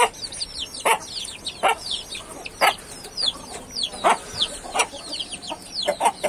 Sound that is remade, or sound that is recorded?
remade